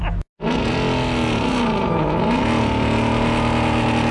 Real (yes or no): yes